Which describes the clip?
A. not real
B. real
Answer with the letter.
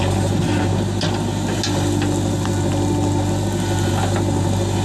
B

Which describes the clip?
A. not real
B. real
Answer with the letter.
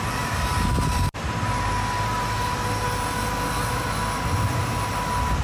B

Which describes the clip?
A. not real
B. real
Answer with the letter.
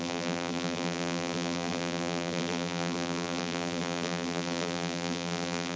A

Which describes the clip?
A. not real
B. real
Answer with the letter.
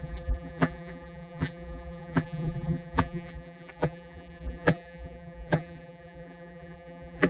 A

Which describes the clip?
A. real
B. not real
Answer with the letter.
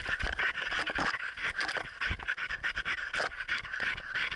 A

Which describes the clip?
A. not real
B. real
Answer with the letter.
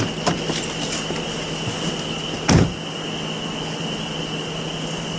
B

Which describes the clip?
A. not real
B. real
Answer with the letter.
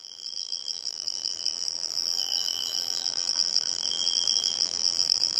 A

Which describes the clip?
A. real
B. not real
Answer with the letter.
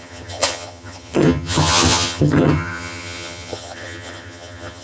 B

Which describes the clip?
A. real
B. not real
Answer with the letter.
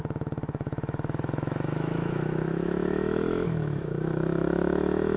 B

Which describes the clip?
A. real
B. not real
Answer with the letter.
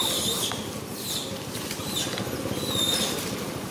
A